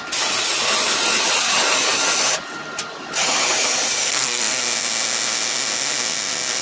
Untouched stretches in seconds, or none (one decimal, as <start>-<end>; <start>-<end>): 0.0-4.0; 4.6-6.6